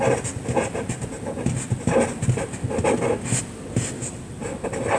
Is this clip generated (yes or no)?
no